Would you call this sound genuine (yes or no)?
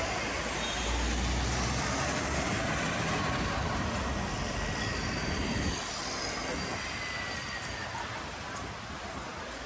yes